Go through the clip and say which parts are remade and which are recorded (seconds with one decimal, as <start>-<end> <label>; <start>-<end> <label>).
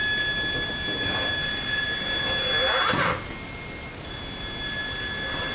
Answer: 0.0-5.5 recorded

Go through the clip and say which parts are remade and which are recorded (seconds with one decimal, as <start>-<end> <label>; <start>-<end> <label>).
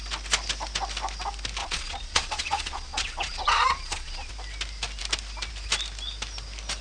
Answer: 0.0-1.6 recorded; 1.6-4.3 remade; 4.3-6.8 recorded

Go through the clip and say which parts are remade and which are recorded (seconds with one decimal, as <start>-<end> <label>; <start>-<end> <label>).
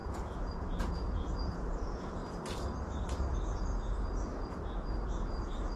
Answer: 0.0-2.2 remade; 2.2-3.3 recorded; 3.3-5.8 remade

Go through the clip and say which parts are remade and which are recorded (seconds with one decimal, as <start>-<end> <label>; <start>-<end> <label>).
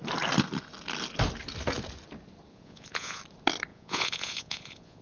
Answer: 0.0-2.5 recorded; 2.5-3.2 remade; 3.2-3.7 recorded; 3.7-5.0 remade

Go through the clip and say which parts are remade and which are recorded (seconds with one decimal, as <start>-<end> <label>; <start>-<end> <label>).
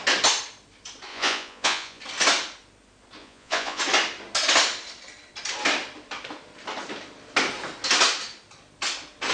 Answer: 0.0-1.1 recorded; 1.1-2.0 remade; 2.0-3.2 recorded; 3.2-3.8 remade; 3.8-9.3 recorded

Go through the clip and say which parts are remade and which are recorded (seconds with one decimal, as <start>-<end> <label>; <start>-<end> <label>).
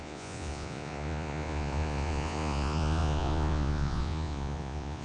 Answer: 0.0-5.0 remade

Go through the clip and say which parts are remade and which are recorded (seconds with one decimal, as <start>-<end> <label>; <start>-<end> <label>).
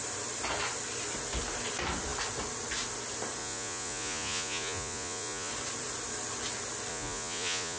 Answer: 0.0-3.4 recorded; 3.4-5.5 remade; 5.5-6.9 recorded; 6.9-7.8 remade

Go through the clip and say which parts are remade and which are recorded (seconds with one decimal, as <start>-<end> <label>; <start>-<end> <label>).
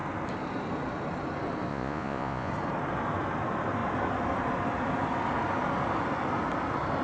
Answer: 0.0-1.7 recorded; 1.7-2.5 remade; 2.5-7.0 recorded